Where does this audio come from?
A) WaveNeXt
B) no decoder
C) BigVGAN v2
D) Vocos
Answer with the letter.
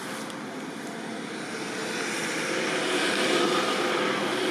B